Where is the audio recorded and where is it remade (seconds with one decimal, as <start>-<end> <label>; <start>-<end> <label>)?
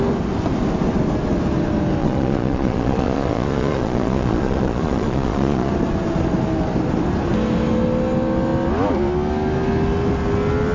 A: 0.0-2.0 recorded; 2.0-5.7 remade; 5.7-10.7 recorded